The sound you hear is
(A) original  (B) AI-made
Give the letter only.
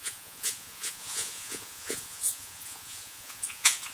B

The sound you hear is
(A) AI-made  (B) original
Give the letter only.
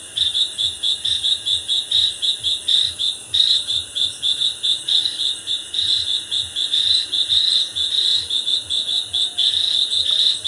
B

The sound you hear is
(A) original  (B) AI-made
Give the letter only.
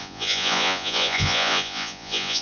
B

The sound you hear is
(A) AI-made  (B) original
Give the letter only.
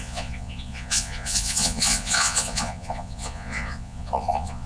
A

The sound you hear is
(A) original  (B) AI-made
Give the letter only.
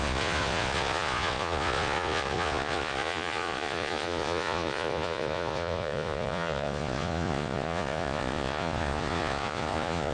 B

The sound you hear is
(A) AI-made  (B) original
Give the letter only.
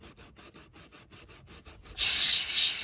B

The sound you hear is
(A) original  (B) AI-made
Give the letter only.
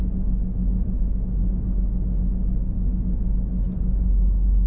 A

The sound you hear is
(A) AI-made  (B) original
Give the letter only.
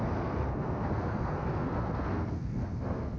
A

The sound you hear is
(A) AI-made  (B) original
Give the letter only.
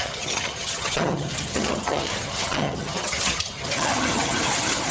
A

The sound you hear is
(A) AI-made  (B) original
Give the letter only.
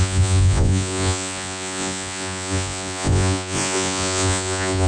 A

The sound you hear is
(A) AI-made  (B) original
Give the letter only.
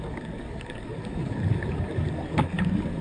A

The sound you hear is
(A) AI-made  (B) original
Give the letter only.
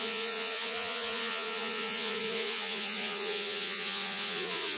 A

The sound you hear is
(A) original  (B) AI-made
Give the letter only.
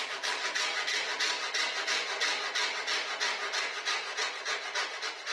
A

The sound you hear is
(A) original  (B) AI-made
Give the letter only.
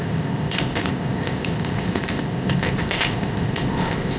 B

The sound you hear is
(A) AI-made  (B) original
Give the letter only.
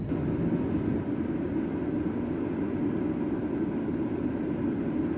B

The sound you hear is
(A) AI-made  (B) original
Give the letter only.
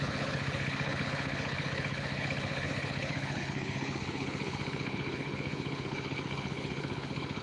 A